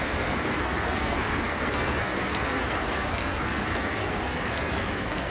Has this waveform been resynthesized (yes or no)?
yes